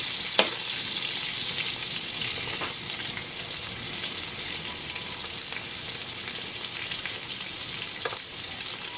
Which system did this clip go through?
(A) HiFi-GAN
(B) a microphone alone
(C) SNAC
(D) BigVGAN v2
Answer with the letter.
B